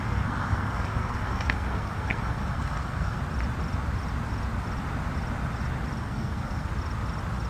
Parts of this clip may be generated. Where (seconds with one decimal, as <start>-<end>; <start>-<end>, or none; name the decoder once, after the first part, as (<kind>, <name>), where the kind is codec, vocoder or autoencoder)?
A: 0.0-3.2 (codec, SNAC); 6.0-6.7